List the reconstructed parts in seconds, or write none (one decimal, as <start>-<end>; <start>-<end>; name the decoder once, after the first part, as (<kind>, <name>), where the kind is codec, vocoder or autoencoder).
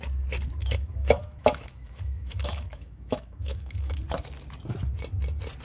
0.6-4.0 (autoencoder, DAC-VAE)